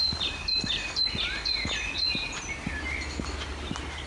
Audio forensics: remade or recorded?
recorded